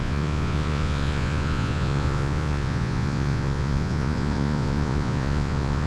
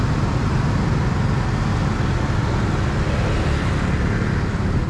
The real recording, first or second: second